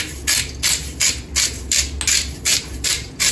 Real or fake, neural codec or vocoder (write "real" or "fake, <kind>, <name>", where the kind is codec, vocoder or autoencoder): real